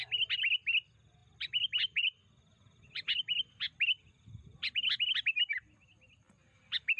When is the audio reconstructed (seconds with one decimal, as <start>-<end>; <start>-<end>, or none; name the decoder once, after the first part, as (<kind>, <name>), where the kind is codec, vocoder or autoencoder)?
none